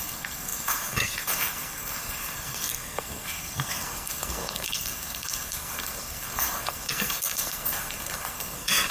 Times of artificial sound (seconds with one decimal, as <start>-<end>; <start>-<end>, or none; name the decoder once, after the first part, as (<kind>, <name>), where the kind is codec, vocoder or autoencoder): 0.0-8.9 (codec, SNAC)